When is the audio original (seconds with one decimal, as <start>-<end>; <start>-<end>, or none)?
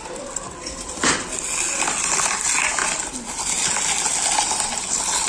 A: 0.0-5.3